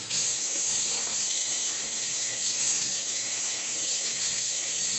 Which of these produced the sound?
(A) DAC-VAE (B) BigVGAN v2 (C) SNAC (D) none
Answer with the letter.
C